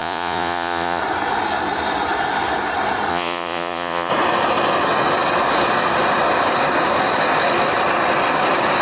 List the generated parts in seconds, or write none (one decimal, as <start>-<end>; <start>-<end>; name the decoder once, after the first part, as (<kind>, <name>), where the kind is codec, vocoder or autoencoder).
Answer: 0.0-1.0 (vocoder, Vocos); 3.1-4.1

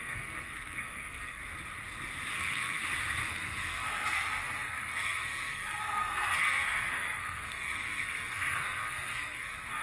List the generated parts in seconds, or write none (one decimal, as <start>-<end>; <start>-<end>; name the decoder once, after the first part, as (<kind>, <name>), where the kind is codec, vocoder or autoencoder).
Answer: 0.0-1.4 (codec, SNAC); 2.3-2.8; 3.3-9.8

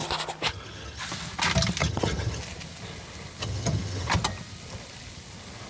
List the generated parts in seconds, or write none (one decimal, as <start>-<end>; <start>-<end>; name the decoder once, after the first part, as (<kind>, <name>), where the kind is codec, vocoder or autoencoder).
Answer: 0.5-1.0 (vocoder, HiFi-GAN); 1.8-2.4; 3.4-4.1

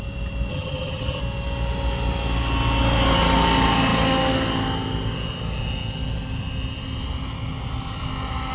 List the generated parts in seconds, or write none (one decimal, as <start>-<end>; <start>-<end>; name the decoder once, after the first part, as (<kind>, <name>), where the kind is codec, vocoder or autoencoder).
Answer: 0.5-1.2 (vocoder, HiFi-GAN)

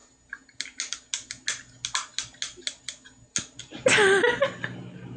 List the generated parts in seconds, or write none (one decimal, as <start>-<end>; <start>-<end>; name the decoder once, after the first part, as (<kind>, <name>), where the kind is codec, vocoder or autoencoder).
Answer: none

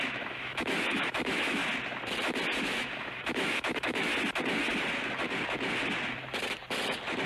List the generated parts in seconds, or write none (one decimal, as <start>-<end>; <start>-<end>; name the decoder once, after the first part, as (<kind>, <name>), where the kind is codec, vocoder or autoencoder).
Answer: 0.0-1.6 (autoencoder, DAC-VAE); 2.6-4.1

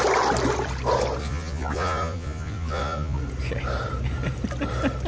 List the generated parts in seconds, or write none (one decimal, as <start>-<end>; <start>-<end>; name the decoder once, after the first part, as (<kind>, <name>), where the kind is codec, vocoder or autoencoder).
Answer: 1.2-3.2 (vocoder, Vocos)

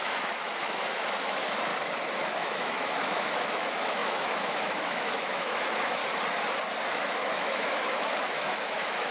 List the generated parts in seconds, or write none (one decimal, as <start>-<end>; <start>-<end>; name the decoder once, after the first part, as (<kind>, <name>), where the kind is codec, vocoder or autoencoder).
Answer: 0.0-1.7 (autoencoder, DAC-VAE); 2.2-6.0; 6.9-9.1